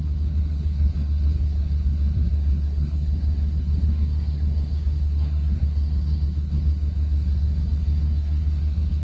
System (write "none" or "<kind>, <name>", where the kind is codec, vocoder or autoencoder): codec, SNAC